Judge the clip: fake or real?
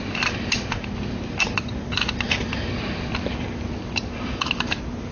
real